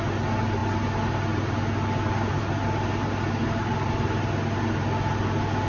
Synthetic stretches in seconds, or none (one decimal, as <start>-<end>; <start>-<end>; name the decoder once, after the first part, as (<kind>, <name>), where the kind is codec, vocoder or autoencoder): none